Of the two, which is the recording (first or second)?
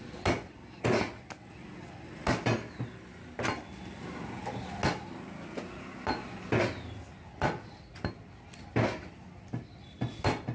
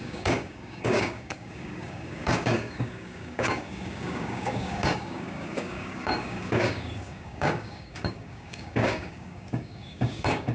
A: first